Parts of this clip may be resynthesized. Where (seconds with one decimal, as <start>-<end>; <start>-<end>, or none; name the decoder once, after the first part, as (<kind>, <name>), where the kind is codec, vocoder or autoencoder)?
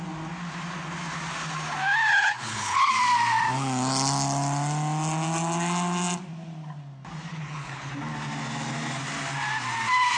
2.1-2.9 (codec, HILCodec); 7.3-7.9